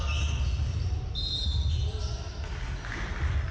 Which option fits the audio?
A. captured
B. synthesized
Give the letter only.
A